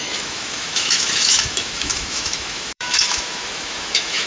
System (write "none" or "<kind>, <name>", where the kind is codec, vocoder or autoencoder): autoencoder, DAC-VAE